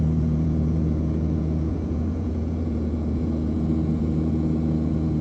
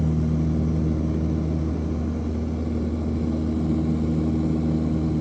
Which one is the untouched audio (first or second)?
second